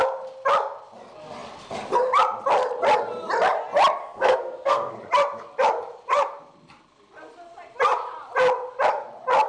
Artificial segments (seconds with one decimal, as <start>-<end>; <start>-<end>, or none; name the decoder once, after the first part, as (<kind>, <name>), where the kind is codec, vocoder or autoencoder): 4.0-4.9 (codec, SNAC)